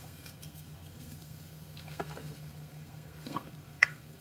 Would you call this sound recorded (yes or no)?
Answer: no